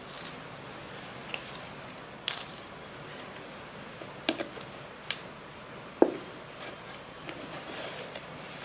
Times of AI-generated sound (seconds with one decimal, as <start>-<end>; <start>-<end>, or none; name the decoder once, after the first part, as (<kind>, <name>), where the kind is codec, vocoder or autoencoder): none